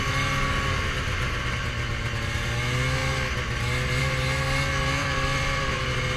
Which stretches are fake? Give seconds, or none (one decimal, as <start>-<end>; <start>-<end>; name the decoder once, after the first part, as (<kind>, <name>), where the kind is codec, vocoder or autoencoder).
5.0-5.8 (vocoder, BigVGAN v2)